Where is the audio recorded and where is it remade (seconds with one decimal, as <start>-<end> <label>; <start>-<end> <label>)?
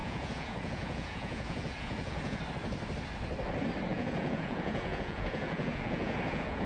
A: 0.0-2.4 remade; 2.4-3.9 recorded; 3.9-6.7 remade